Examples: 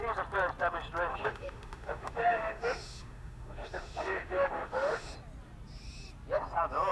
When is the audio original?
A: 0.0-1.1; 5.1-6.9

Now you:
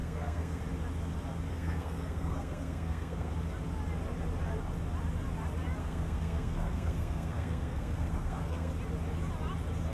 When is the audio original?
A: 0.6-1.5; 3.3-5.8; 8.7-9.9

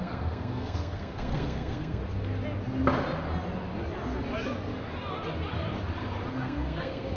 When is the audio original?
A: 2.0-6.3

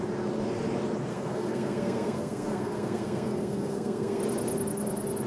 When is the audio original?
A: 0.0-1.1; 4.2-5.3